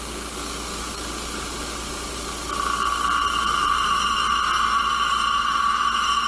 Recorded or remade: recorded